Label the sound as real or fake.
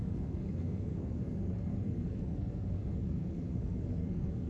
fake